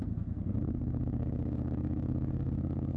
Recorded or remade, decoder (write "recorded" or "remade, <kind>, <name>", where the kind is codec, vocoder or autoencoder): remade, codec, SNAC